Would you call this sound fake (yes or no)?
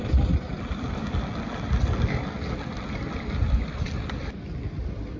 no